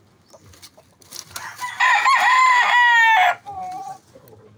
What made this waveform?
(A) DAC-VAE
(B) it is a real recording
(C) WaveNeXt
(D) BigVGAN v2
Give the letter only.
B